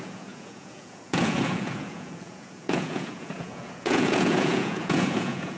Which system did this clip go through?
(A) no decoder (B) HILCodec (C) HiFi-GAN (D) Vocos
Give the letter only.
D